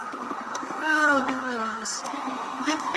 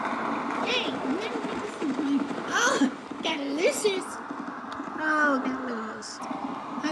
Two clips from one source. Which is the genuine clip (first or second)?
second